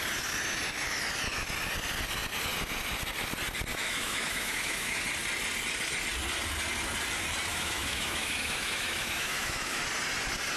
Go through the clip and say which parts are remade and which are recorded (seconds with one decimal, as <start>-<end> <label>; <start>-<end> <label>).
0.0-3.7 recorded; 3.7-5.0 remade; 5.0-7.5 recorded; 7.5-9.8 remade; 9.8-10.6 recorded